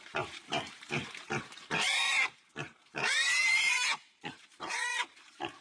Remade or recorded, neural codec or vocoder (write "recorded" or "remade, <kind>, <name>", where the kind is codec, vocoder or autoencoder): remade, vocoder, BigVGAN v2